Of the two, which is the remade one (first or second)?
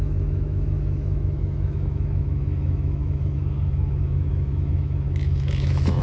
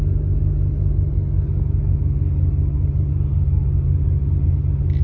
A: first